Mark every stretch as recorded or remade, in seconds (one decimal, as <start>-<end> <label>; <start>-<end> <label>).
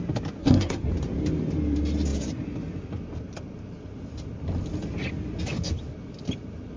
0.0-0.4 recorded; 0.4-0.9 remade; 0.9-6.8 recorded